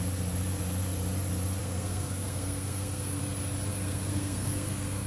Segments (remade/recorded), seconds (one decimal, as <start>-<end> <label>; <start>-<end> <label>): 0.0-1.6 recorded; 1.6-3.2 remade; 3.2-3.7 recorded; 3.7-5.1 remade